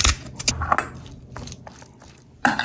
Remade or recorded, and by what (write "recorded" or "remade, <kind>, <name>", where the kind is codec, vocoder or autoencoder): recorded